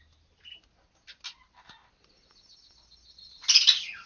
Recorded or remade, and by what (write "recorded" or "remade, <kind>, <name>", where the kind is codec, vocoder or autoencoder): recorded